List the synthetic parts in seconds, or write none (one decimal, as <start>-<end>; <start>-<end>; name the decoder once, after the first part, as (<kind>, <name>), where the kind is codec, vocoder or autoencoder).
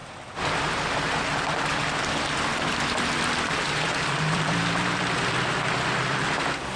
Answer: 2.5-6.8 (vocoder, BigVGAN v2)